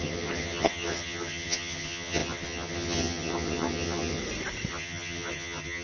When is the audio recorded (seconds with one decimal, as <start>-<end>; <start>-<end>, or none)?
4.2-4.7